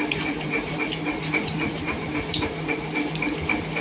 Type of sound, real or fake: fake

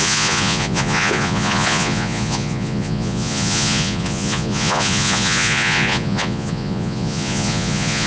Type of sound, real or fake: fake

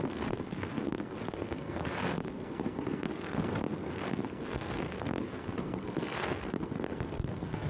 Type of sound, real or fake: fake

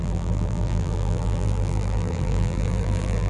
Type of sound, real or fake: fake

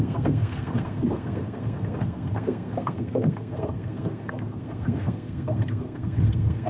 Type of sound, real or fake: fake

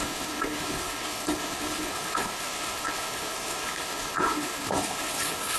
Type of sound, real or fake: fake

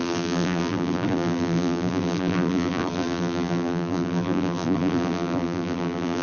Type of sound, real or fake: fake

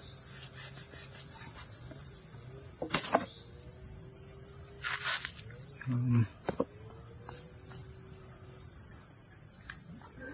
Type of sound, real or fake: real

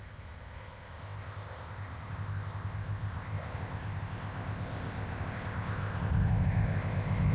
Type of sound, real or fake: fake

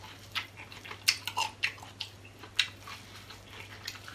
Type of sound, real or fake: real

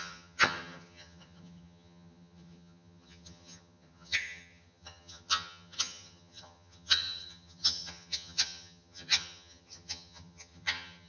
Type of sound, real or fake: fake